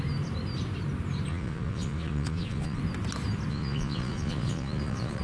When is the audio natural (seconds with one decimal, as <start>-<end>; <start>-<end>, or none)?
0.0-1.3; 2.8-3.5